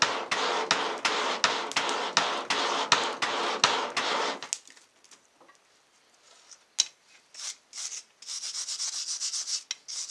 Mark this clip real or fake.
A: real